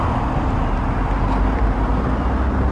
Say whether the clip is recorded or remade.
recorded